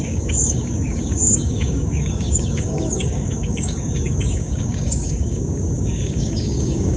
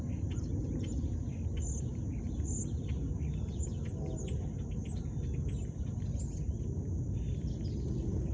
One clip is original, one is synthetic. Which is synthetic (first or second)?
first